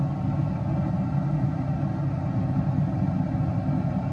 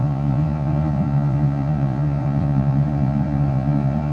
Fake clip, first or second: second